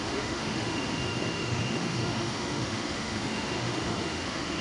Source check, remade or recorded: remade